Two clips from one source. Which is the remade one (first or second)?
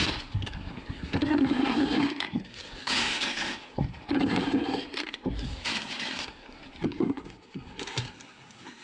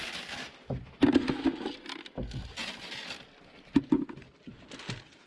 first